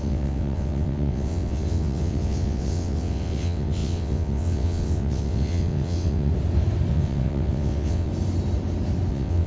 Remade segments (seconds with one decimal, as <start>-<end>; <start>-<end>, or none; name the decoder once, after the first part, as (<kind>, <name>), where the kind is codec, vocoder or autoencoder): 0.0-6.3 (vocoder, WaveNeXt); 6.9-8.1; 9.1-9.5